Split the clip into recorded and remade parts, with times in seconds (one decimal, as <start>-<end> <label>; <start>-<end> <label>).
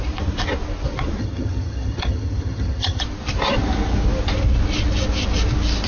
0.0-1.2 recorded; 1.2-3.0 remade; 3.0-5.9 recorded